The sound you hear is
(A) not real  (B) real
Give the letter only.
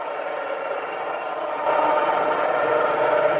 B